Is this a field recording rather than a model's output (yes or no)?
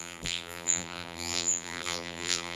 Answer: no